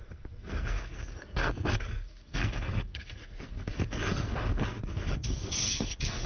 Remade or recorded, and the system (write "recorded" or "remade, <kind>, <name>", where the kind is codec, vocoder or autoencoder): remade, codec, SNAC